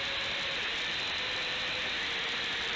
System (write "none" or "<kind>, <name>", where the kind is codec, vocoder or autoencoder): vocoder, BigVGAN v2